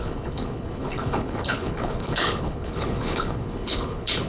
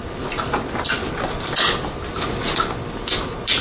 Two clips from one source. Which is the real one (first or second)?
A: second